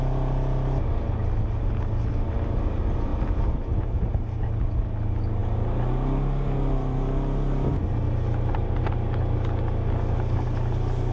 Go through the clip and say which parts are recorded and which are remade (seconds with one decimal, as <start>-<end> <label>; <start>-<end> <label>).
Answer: 0.0-11.1 recorded